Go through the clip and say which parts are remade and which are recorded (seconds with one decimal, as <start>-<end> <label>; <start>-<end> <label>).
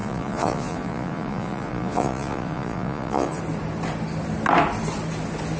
0.0-3.4 remade; 3.4-5.6 recorded